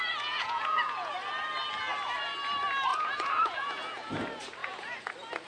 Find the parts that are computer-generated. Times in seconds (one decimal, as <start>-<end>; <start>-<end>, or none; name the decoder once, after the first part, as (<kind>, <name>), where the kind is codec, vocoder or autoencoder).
0.0-1.1 (vocoder, Vocos); 2.9-4.1; 4.6-5.1